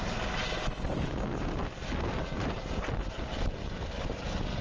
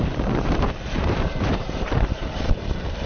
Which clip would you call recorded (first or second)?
first